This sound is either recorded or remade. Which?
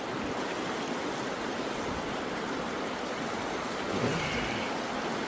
recorded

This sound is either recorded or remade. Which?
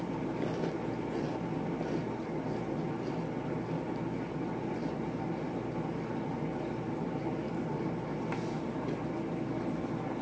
recorded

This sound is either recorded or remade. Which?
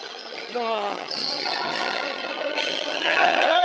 remade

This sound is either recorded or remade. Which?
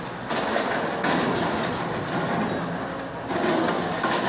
recorded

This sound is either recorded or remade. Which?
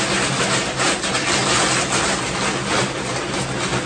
recorded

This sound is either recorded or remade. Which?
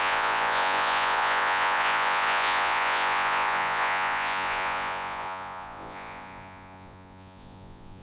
remade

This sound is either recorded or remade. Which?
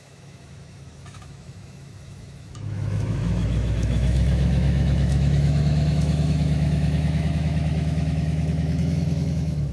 remade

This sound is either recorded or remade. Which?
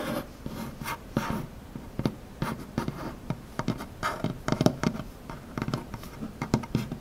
remade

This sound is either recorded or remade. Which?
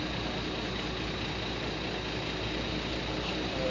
recorded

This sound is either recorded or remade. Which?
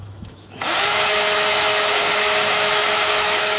remade